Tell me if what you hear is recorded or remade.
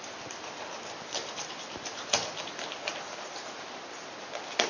remade